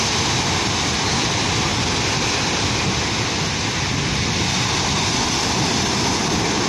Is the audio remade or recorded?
recorded